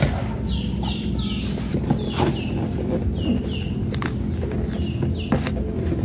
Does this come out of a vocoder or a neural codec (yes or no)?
no